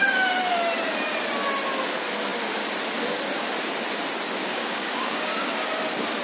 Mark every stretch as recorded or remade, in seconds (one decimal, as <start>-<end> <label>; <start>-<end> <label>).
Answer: 0.0-4.4 recorded; 4.4-5.7 remade; 5.7-6.2 recorded